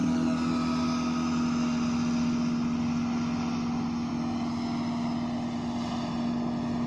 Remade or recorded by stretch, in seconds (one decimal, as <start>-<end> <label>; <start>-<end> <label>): 0.0-6.9 recorded